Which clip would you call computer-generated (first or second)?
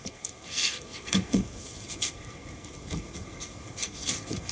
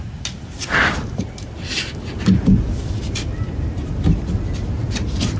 first